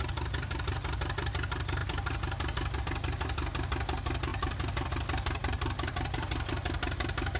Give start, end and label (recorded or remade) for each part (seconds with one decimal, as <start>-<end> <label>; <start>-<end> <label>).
0.0-4.3 recorded; 4.3-4.9 remade; 4.9-5.4 recorded; 5.4-6.5 remade; 6.5-7.4 recorded